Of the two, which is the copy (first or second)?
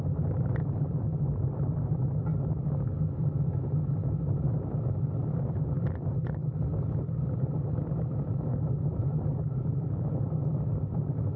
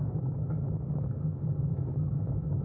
second